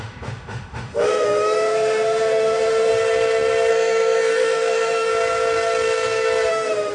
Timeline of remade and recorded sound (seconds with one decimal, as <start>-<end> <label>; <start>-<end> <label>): 0.0-2.9 remade; 2.9-3.7 recorded; 3.7-5.1 remade; 5.1-6.5 recorded; 6.5-6.9 remade